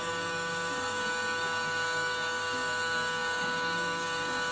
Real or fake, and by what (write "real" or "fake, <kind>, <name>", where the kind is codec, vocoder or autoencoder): fake, codec, DAC